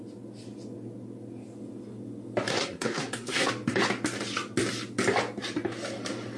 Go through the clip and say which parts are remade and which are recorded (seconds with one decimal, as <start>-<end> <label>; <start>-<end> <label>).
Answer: 0.0-2.5 recorded; 2.5-3.5 remade; 3.5-6.4 recorded